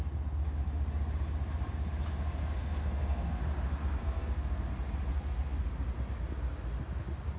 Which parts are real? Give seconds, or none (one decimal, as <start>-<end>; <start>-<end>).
0.0-2.4; 3.4-3.8; 4.6-5.1; 5.6-7.4